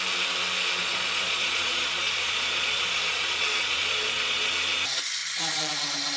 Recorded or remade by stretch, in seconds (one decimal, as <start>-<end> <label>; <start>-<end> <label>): 0.0-0.8 recorded; 0.8-4.5 remade; 4.5-5.2 recorded; 5.2-5.7 remade; 5.7-6.2 recorded